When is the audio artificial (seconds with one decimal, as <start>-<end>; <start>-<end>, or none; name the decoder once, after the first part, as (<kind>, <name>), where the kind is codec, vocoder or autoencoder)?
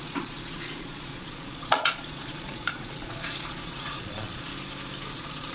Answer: 0.0-4.5 (vocoder, Vocos); 5.1-5.5